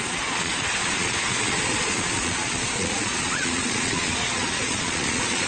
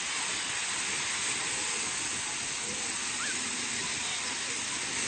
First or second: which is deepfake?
first